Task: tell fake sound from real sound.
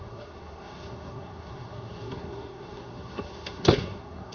fake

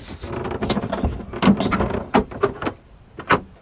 real